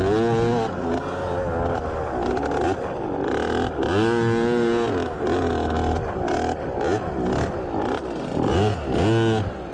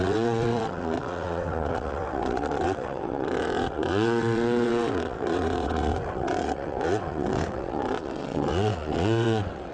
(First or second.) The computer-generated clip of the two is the second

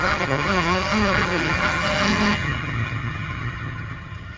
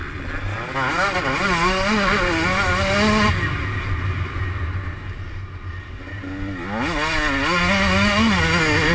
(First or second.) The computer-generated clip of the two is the first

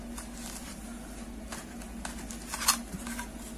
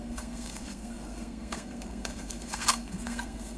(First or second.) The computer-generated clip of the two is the second